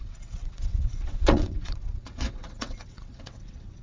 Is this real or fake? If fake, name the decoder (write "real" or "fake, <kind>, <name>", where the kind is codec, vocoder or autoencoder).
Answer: fake, vocoder, WaveNeXt